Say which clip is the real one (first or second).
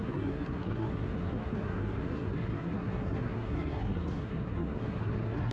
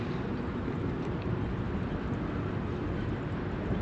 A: second